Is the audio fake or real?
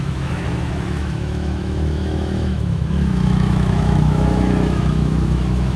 fake